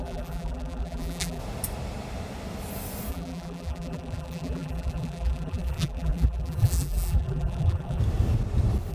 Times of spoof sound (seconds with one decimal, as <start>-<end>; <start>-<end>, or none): 0.0-1.4; 3.1-8.0